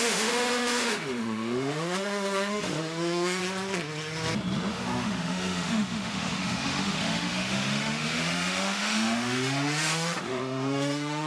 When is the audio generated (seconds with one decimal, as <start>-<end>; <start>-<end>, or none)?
0.0-3.4; 4.7-11.3